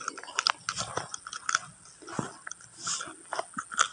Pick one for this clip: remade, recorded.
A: recorded